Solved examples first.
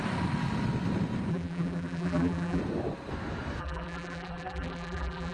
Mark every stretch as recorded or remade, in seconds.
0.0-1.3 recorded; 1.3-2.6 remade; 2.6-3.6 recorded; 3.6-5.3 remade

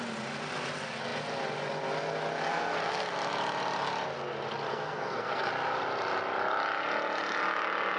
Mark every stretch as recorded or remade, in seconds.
0.0-2.5 recorded; 2.5-3.1 remade; 3.1-4.7 recorded; 4.7-5.5 remade; 5.5-8.0 recorded